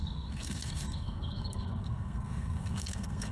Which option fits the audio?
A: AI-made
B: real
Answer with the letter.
A